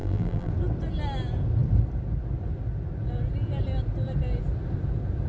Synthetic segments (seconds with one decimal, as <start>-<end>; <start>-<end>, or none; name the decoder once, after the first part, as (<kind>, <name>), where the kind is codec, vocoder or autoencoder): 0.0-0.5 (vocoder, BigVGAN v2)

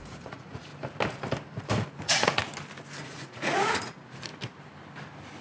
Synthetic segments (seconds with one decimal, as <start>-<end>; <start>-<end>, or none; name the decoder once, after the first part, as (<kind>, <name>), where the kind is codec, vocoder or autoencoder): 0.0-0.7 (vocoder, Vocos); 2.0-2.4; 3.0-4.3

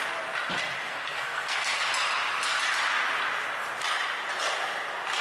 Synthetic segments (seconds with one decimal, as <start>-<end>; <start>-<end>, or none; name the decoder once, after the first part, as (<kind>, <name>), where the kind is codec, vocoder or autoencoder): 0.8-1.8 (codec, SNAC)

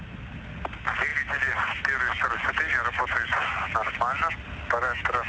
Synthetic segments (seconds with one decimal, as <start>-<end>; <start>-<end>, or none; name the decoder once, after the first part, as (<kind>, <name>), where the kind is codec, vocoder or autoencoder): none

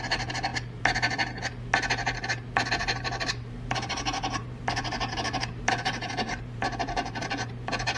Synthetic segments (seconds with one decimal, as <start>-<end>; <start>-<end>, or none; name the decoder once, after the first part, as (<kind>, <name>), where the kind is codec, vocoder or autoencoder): 0.0-0.5 (vocoder, BigVGAN v2); 2.7-8.0

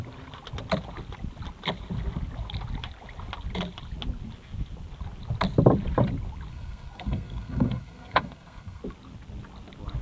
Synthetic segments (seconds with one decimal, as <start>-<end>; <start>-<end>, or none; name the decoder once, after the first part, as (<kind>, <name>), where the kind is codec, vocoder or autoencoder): 6.5-8.8 (codec, SNAC)

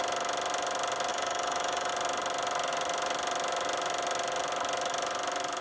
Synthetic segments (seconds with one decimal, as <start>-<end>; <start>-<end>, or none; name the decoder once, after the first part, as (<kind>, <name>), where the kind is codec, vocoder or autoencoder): 1.1-1.9 (autoencoder, DAC-VAE)

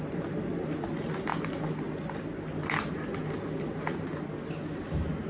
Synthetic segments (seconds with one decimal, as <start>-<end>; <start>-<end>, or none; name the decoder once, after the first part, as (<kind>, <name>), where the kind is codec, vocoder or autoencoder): none